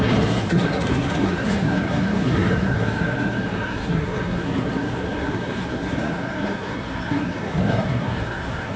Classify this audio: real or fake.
fake